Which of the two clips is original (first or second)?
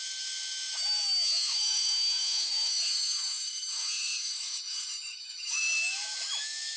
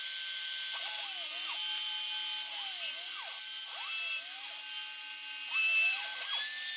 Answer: second